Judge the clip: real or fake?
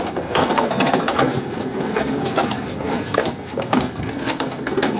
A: fake